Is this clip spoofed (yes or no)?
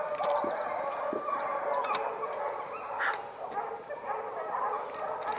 no